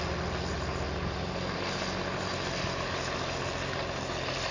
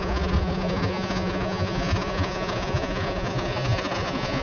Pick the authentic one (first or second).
first